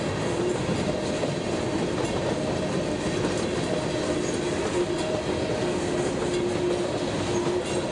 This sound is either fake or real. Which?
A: real